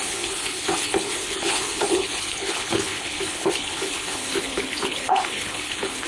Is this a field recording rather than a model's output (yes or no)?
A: no